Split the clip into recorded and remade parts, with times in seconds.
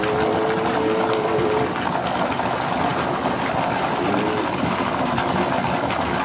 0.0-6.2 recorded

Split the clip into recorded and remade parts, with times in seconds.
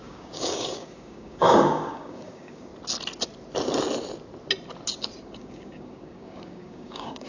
0.0-2.7 remade; 2.7-5.2 recorded; 5.2-7.3 remade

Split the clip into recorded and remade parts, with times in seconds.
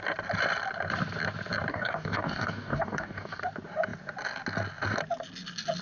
0.0-1.7 recorded; 1.7-3.4 remade; 3.4-5.8 recorded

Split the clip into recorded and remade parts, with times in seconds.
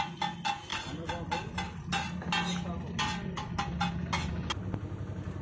0.0-5.4 recorded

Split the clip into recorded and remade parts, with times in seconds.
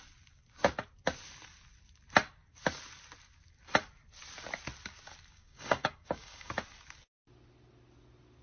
0.0-5.3 recorded; 5.3-6.5 remade; 6.5-8.4 recorded